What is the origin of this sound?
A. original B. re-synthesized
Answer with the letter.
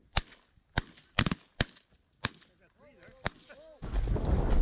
A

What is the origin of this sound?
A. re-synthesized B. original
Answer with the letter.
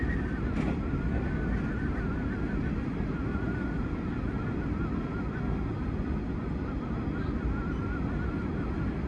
B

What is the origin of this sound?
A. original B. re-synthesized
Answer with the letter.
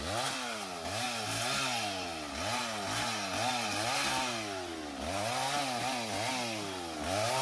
A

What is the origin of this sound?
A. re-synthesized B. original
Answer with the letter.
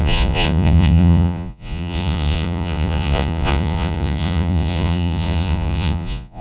A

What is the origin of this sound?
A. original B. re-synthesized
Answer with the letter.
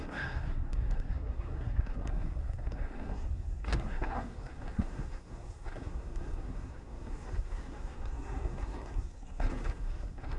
B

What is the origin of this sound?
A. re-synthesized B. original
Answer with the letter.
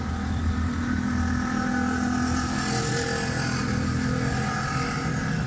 B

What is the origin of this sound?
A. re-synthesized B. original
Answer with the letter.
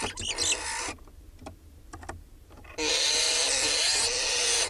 B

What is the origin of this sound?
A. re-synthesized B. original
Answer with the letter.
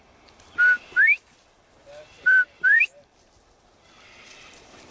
A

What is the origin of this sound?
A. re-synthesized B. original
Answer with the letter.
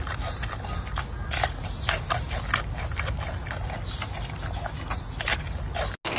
B